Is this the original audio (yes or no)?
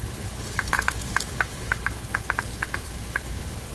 no